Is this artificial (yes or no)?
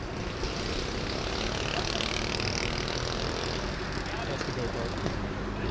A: no